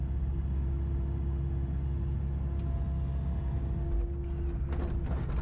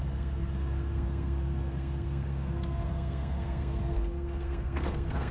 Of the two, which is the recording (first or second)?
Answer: first